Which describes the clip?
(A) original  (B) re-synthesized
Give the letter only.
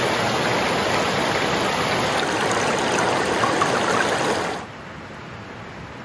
A